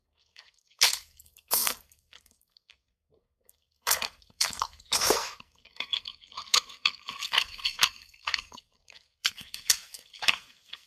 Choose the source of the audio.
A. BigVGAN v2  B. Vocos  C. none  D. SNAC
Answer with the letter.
D